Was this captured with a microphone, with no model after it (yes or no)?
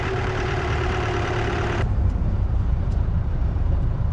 no